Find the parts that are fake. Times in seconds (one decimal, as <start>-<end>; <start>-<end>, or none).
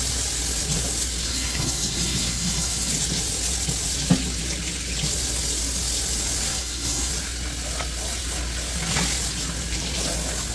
1.3-2.9; 6.5-7.1